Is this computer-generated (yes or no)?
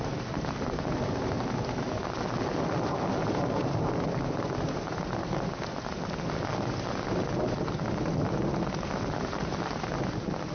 no